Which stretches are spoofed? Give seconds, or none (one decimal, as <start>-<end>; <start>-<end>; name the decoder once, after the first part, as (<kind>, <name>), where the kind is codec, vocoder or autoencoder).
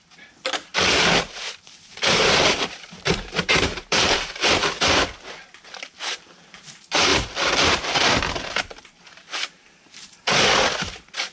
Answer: 0.0-0.7 (vocoder, BigVGAN v2); 1.6-4.6; 5.6-7.1; 8.2-11.3